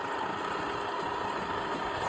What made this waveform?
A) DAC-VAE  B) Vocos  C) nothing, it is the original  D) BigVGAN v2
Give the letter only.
C